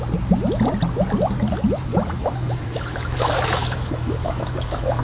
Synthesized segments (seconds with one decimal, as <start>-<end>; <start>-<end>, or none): 1.9-5.0